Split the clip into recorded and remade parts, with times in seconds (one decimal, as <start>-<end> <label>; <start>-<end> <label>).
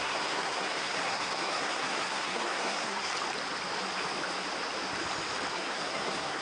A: 0.0-3.1 remade; 3.1-5.5 recorded; 5.5-6.4 remade